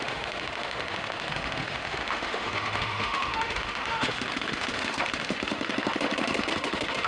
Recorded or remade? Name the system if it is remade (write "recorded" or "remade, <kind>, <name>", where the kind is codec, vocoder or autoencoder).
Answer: remade, autoencoder, DAC-VAE